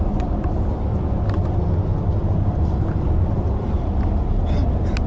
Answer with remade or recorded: recorded